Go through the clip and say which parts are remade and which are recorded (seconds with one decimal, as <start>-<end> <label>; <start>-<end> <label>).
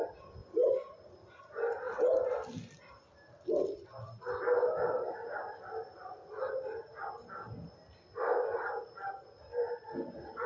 0.0-10.5 recorded